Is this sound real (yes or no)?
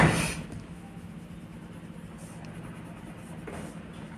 yes